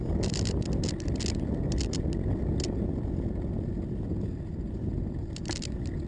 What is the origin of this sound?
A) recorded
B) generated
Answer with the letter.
A